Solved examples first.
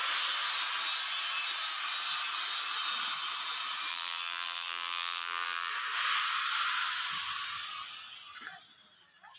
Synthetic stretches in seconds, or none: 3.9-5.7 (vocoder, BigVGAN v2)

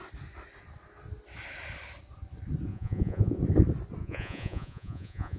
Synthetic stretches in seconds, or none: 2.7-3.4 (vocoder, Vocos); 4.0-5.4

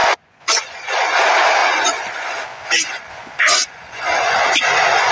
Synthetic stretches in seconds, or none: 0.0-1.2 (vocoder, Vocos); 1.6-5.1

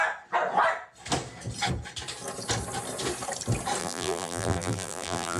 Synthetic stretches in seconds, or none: 3.8-5.4 (vocoder, BigVGAN v2)